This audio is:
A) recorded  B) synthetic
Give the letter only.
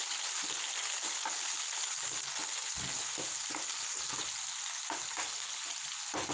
A